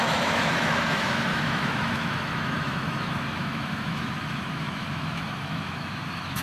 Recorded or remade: remade